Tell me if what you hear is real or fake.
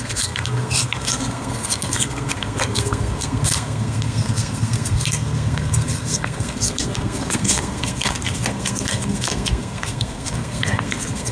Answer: fake